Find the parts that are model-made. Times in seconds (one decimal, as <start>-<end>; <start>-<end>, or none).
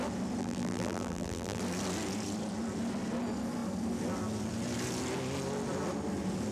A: 0.4-1.6